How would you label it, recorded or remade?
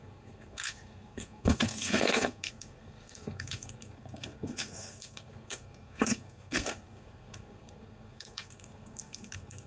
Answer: remade